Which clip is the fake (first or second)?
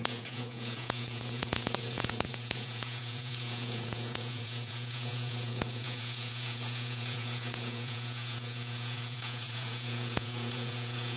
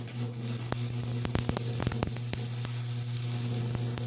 first